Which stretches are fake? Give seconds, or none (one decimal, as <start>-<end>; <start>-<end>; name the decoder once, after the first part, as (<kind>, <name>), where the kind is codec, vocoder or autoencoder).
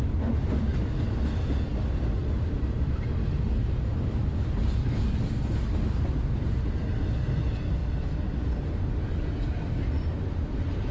4.3-5.0 (vocoder, BigVGAN v2)